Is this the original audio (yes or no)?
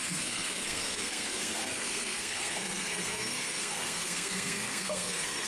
no